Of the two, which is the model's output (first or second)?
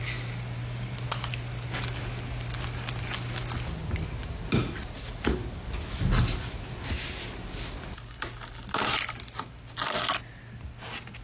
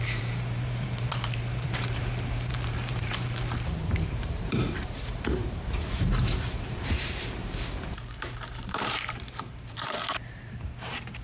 second